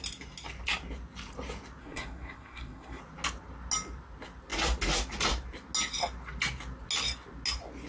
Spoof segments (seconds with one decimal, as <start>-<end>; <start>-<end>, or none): 1.8-3.0